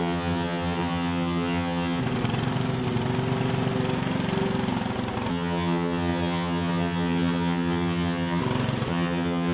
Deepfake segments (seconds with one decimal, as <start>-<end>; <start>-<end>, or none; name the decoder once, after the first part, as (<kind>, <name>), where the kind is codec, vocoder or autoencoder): 0.0-2.0 (vocoder, HiFi-GAN); 5.3-8.4; 8.9-9.5